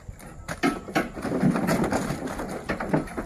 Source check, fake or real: real